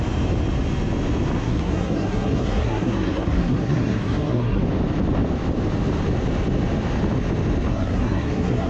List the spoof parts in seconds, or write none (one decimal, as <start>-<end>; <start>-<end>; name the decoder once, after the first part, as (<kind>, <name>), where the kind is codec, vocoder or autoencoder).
1.4-4.6 (codec, SNAC); 7.7-8.7